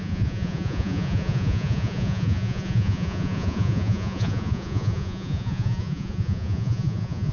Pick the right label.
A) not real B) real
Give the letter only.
A